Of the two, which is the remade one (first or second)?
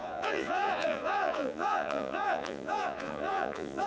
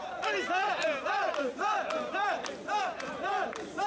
first